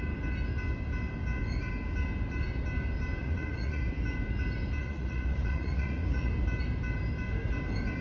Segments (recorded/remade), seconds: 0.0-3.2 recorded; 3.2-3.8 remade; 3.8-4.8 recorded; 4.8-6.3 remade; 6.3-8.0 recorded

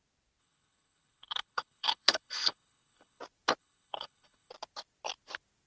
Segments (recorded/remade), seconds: 0.0-0.4 recorded; 0.4-3.2 remade; 3.2-3.6 recorded; 3.6-4.5 remade; 4.5-5.7 recorded

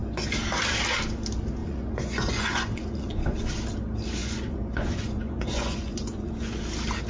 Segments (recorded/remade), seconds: 0.0-1.6 recorded; 1.6-3.5 remade; 3.5-4.2 recorded; 4.2-6.6 remade; 6.6-7.1 recorded

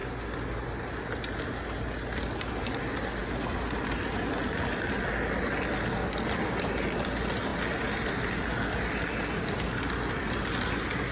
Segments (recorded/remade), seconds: 0.0-11.1 recorded

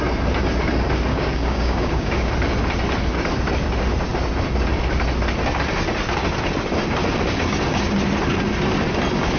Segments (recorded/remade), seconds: 0.0-1.1 recorded; 1.1-2.3 remade; 2.3-9.4 recorded